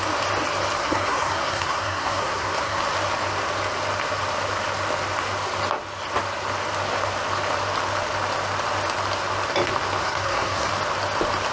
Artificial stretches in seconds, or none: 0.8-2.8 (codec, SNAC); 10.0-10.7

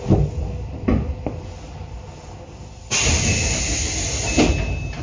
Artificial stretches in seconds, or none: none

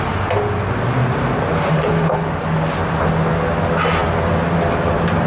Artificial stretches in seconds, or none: 1.0-2.4 (vocoder, BigVGAN v2)